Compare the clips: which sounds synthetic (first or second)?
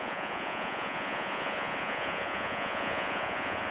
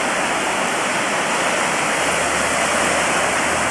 first